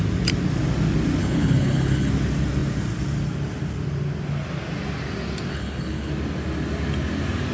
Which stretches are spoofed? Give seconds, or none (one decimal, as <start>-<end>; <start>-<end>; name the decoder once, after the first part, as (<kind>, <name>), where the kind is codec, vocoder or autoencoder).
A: 1.2-2.1 (codec, HILCodec); 5.5-6.1